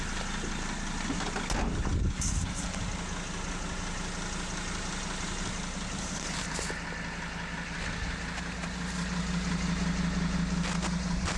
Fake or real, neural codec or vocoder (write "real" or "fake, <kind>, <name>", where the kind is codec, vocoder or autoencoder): real